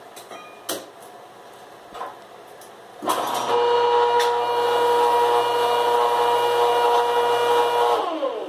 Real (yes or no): yes